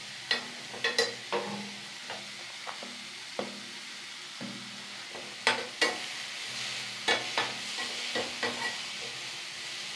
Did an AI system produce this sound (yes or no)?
no